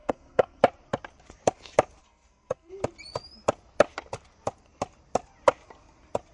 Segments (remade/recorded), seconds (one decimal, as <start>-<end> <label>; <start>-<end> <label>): 0.0-0.6 remade; 0.6-2.0 recorded; 2.0-2.7 remade; 2.7-6.3 recorded

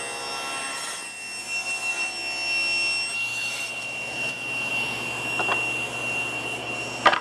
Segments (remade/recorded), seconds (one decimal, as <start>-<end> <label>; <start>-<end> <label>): 0.0-3.3 recorded; 3.3-4.7 remade; 4.7-7.2 recorded